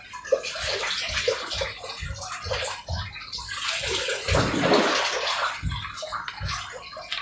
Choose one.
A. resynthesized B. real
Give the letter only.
B